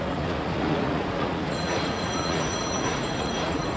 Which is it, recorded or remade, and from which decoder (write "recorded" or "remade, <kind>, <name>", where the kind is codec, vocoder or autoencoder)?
remade, vocoder, Vocos